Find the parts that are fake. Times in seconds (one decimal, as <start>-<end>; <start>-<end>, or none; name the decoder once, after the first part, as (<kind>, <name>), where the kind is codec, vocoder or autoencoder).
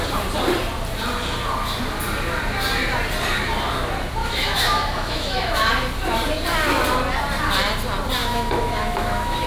4.2-5.7 (autoencoder, DAC-VAE); 8.2-9.5